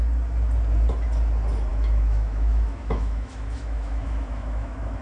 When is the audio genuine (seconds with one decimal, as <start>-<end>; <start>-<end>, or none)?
0.0-1.7